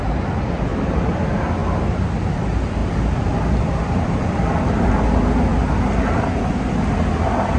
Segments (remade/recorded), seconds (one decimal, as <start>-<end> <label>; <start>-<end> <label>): 0.0-0.7 recorded; 0.7-1.2 remade; 1.2-1.6 recorded; 1.6-2.2 remade; 2.2-2.8 recorded; 2.8-4.9 remade; 4.9-7.6 recorded